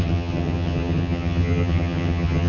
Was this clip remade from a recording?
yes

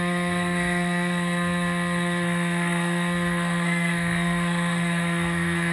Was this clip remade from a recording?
yes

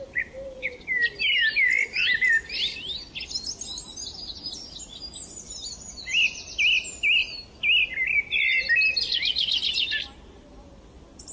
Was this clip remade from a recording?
no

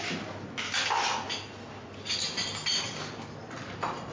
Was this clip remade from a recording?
no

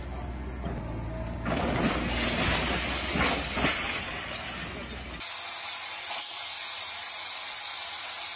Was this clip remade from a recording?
no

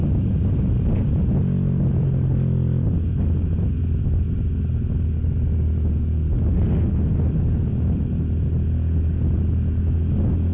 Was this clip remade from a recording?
no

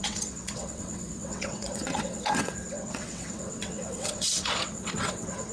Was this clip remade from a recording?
yes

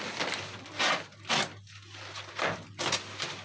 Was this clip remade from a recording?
no